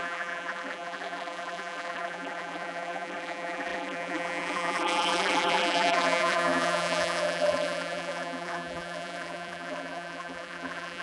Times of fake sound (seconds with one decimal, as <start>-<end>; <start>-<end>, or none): 0.0-11.0